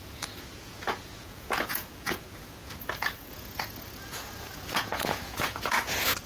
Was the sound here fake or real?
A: fake